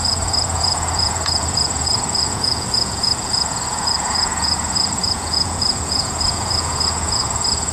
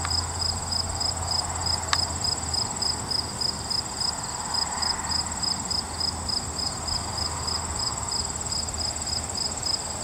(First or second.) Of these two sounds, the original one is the second